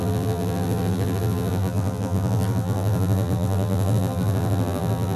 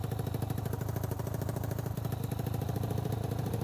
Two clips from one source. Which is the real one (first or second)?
second